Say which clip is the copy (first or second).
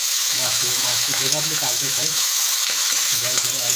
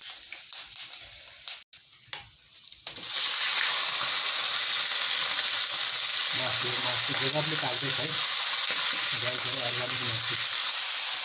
first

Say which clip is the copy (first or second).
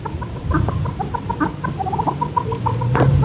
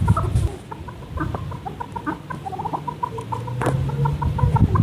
first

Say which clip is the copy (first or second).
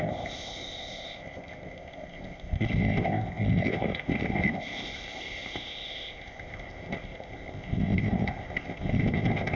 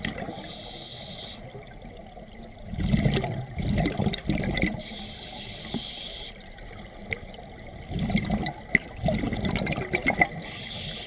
first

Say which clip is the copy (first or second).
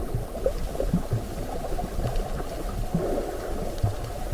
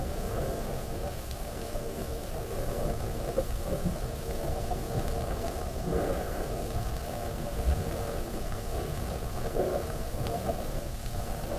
second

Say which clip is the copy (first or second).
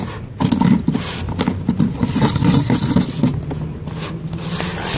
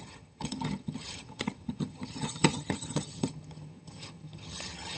second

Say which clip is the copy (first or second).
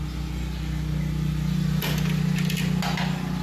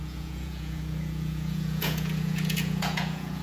second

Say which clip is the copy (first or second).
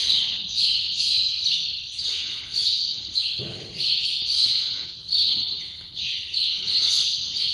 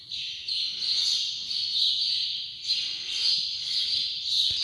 first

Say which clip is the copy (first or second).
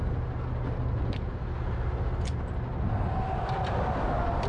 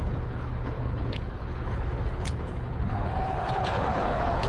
second